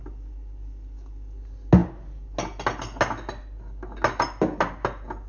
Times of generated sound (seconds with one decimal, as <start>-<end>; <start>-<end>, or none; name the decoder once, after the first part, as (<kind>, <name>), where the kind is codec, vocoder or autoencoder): none